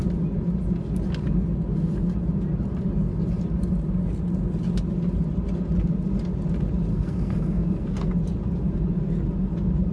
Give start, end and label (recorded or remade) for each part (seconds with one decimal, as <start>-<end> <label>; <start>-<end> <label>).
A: 0.0-6.9 recorded; 6.9-8.1 remade; 8.1-9.9 recorded